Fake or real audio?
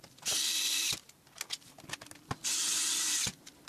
real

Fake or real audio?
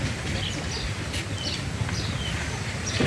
real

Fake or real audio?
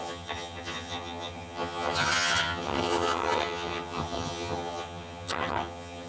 fake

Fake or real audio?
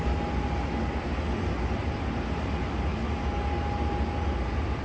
real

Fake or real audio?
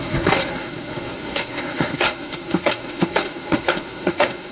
fake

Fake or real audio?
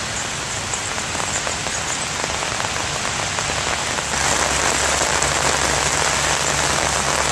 real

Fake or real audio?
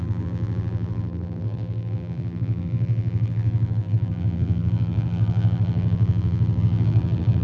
fake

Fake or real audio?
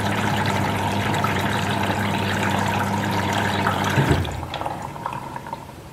fake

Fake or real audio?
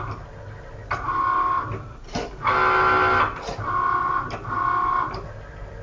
real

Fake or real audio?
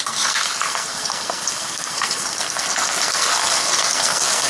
fake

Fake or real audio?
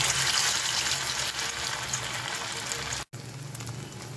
real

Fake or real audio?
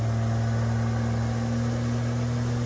real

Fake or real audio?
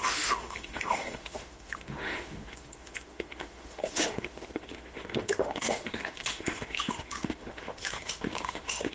fake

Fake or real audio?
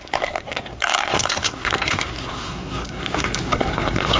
fake